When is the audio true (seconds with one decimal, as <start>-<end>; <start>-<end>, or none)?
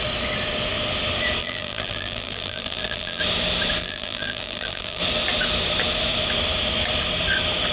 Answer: 0.0-1.4; 3.2-3.8; 5.0-7.7